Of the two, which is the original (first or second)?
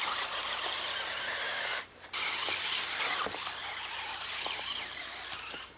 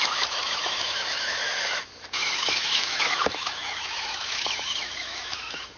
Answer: first